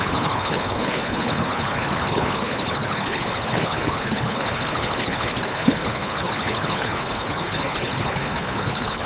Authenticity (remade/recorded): remade